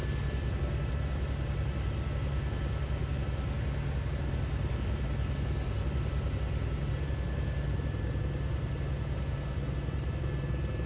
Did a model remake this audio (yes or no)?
no